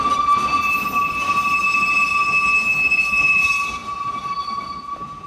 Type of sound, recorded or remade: recorded